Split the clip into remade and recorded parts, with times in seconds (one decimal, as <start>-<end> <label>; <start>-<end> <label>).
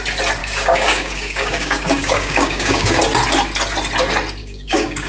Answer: 0.0-0.4 recorded; 0.4-3.0 remade; 3.0-4.4 recorded; 4.4-5.1 remade